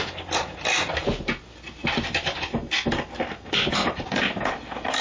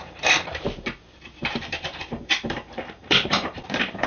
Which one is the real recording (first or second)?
first